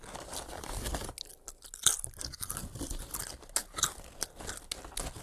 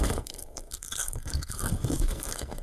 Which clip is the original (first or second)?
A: first